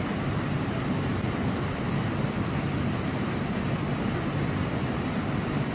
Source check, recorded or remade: recorded